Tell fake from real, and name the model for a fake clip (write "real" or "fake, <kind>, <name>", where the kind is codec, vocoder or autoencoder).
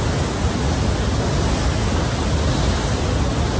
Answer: real